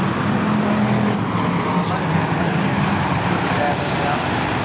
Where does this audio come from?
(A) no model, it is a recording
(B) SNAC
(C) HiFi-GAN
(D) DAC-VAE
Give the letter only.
A